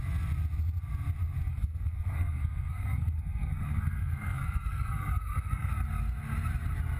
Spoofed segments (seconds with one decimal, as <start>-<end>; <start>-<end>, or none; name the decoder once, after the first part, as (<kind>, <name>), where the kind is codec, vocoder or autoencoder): 1.5-5.7 (codec, SNAC)